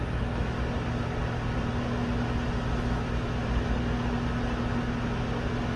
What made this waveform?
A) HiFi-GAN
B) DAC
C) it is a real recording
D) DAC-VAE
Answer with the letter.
C